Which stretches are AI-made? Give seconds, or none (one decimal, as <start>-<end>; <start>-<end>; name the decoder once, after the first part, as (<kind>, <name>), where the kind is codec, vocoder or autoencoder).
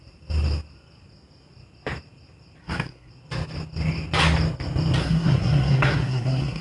2.6-3.1 (codec, SNAC); 5.0-6.6